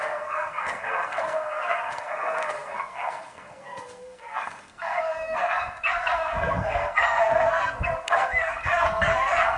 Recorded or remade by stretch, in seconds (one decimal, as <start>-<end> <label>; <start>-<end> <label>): 0.0-9.6 remade